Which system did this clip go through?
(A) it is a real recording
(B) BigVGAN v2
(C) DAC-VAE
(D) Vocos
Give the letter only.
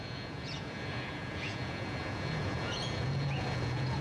D